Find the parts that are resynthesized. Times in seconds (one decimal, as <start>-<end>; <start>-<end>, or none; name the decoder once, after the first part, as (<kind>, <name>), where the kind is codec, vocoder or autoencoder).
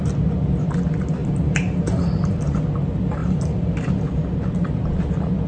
1.2-2.6 (vocoder, BigVGAN v2); 3.2-3.9